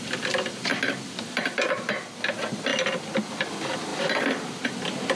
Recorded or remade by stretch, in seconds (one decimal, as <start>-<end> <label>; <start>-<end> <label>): 0.0-2.7 recorded; 2.7-3.5 remade; 3.5-3.9 recorded; 3.9-4.7 remade; 4.7-5.2 recorded